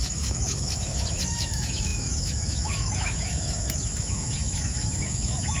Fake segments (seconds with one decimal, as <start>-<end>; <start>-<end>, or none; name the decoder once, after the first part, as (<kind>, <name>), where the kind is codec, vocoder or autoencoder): 0.0-5.6 (autoencoder, DAC-VAE)